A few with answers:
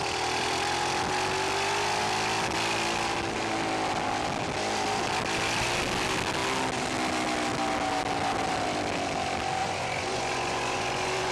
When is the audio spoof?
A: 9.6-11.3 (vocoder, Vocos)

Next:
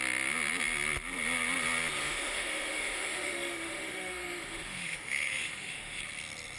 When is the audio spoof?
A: 2.0-6.0 (autoencoder, DAC-VAE)

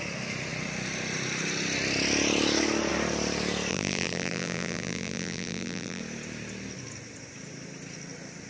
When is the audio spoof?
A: 3.7-6.0 (vocoder, BigVGAN v2)

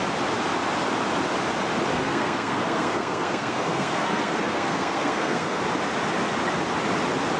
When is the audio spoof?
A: 1.9-5.6 (codec, SNAC)

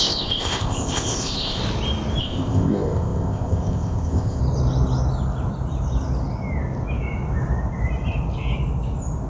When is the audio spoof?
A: 0.0-1.6 (codec, ZipCodec); 2.2-4.4

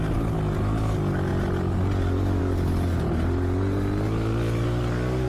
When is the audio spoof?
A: none

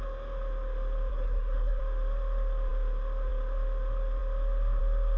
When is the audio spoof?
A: 1.1-1.8 (codec, SNAC)